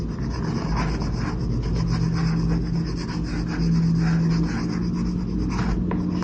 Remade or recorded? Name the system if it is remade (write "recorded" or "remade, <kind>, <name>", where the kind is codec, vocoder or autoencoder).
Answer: recorded